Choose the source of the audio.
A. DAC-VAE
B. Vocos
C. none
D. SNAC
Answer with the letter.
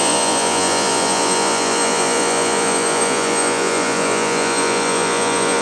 B